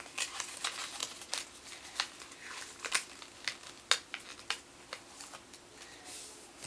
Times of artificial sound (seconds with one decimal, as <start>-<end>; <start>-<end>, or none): none